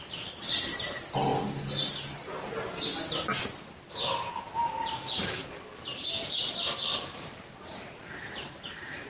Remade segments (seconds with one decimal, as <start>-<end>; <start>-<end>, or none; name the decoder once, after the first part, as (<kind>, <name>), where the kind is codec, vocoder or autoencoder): none